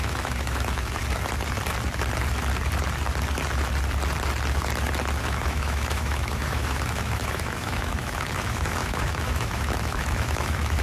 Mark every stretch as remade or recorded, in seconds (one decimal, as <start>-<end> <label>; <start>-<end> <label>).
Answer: 0.0-1.0 remade; 1.0-5.2 recorded; 5.2-10.8 remade